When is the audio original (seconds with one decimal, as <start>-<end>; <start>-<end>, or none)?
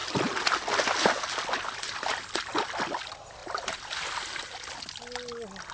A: 0.0-5.7